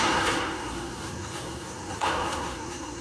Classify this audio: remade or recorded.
remade